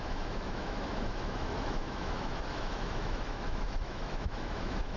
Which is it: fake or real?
fake